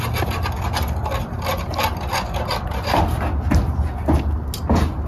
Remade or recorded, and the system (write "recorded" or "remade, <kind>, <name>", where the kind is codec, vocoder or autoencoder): recorded